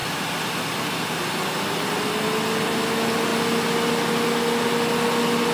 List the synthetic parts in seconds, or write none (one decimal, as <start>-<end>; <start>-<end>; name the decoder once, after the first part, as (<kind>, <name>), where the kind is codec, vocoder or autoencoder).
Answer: none